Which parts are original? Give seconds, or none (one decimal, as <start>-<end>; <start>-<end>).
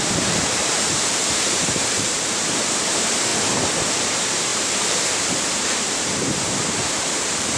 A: 3.3-4.0